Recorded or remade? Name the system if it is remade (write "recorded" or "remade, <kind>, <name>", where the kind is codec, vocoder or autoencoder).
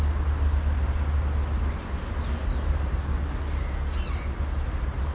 recorded